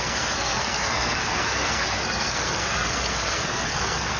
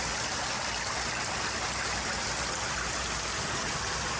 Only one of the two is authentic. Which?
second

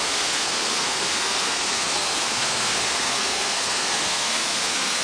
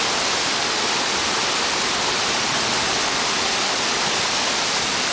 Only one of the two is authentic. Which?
second